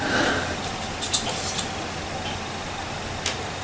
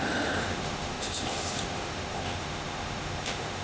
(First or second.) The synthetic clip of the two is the second